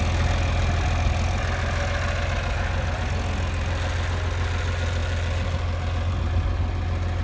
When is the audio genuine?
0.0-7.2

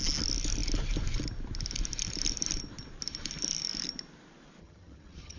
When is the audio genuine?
0.0-4.6

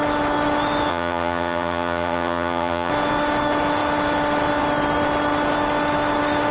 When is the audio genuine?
0.0-0.9; 2.9-6.5

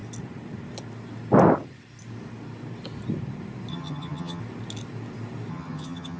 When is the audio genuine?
0.0-3.7; 4.4-5.5